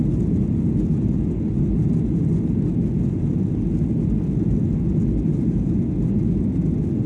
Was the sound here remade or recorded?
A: recorded